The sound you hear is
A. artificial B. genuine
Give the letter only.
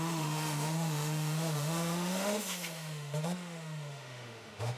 A